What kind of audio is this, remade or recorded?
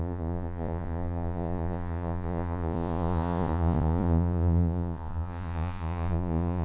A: remade